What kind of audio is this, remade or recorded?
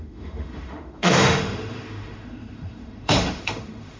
remade